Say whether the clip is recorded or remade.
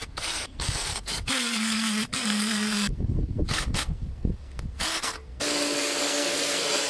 remade